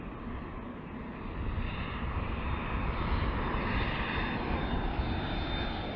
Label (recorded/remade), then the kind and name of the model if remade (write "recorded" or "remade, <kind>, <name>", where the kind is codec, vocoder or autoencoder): recorded